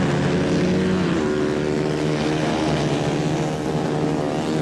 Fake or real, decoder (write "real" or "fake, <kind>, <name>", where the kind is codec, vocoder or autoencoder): real